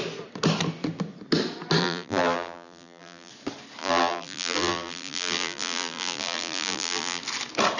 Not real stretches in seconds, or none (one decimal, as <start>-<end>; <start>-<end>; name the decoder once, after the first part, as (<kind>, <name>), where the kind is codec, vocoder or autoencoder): 1.8-3.3 (vocoder, BigVGAN v2); 3.8-7.2